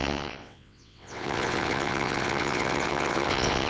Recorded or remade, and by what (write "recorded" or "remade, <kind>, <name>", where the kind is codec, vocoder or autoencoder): remade, vocoder, WaveNeXt